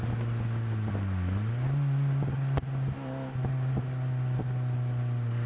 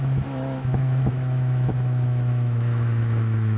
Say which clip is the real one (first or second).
first